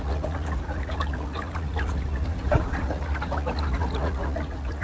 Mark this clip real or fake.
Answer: fake